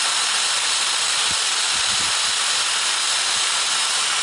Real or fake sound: real